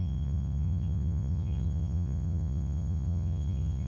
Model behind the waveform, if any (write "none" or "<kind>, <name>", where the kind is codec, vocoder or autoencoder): vocoder, Vocos